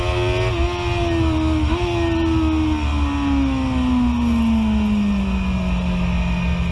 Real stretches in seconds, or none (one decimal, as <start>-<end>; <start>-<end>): 0.0-6.7